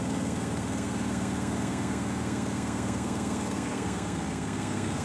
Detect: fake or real fake